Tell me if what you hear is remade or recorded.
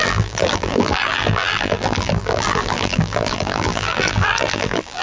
remade